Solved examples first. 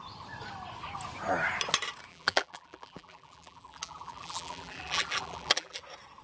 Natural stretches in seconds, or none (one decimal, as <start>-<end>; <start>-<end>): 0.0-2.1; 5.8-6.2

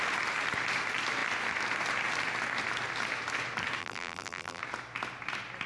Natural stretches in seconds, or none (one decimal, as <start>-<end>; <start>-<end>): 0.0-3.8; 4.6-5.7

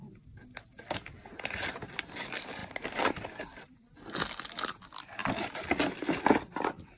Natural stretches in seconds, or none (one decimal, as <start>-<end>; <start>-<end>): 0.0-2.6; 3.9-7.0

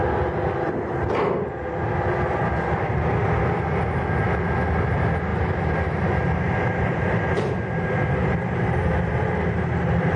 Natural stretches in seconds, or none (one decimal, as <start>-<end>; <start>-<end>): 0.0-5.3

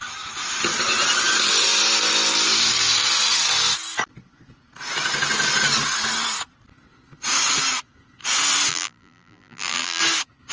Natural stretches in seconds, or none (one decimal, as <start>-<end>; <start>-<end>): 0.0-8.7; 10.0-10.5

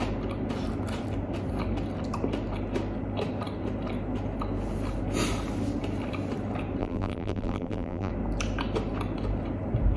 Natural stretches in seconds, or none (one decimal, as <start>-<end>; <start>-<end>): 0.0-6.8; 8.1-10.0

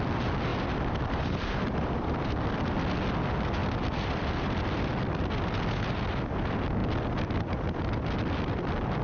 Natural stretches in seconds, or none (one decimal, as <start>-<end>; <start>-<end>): 0.0-0.5; 2.8-3.6; 5.2-6.8; 8.6-9.0